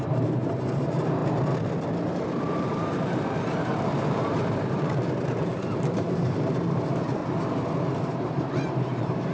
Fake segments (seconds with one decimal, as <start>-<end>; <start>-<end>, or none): 0.0-1.2; 2.6-7.2; 8.0-9.3